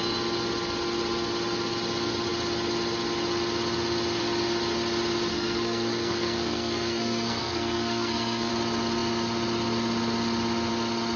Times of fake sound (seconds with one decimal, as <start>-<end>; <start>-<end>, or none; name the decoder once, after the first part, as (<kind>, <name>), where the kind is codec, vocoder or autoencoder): 5.3-8.5 (codec, SNAC)